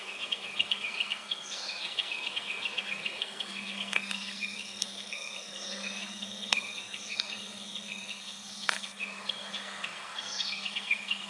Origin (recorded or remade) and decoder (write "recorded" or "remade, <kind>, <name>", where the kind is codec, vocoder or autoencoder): remade, codec, SNAC